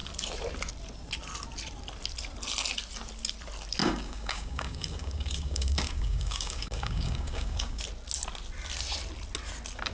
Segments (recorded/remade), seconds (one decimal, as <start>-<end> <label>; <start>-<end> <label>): 0.0-3.8 recorded; 3.8-7.8 remade; 7.8-9.9 recorded